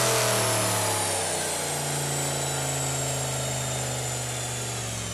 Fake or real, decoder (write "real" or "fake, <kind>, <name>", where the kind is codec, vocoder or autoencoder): real